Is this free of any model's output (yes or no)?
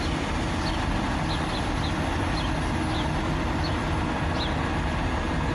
yes